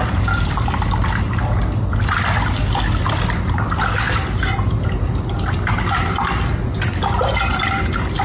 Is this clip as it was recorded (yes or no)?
yes